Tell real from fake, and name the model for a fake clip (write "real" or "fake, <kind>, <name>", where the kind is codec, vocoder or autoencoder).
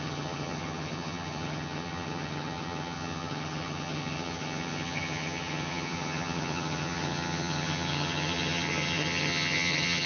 fake, vocoder, HiFi-GAN